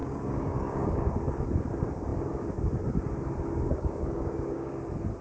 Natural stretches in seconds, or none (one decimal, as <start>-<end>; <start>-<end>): 1.1-3.7; 4.7-5.2